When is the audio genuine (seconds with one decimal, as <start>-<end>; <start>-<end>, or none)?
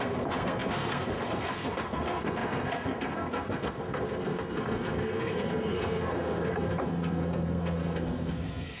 none